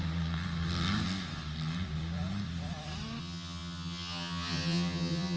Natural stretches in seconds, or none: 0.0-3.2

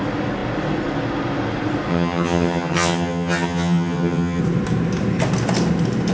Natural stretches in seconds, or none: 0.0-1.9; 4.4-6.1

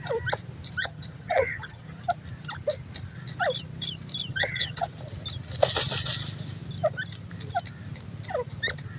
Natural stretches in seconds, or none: 0.0-0.8; 2.0-4.3; 4.9-9.0